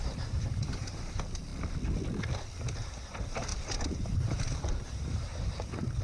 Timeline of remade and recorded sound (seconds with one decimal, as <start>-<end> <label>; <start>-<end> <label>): 0.0-1.5 remade; 1.5-2.4 recorded; 2.4-6.0 remade